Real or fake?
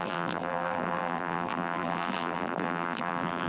fake